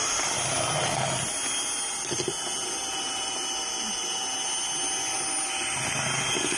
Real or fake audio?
real